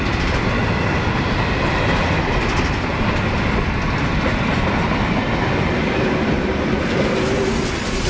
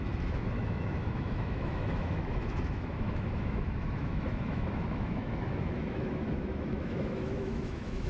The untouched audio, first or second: first